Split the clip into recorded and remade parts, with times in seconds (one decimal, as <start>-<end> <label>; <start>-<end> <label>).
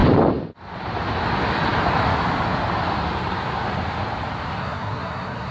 0.0-4.6 recorded; 4.6-5.5 remade